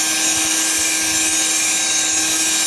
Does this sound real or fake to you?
real